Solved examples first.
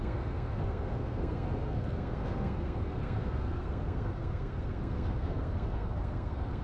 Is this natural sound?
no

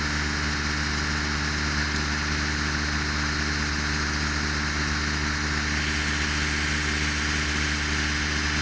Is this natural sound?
yes